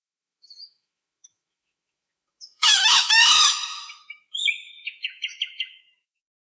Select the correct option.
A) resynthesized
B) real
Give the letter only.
A